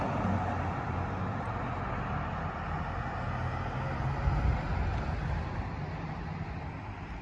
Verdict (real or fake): real